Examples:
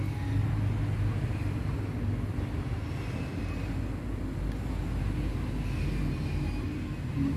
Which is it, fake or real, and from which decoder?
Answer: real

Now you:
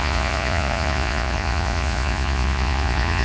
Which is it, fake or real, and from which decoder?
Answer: fake, vocoder, Vocos